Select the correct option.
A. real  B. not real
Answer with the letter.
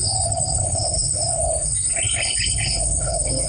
B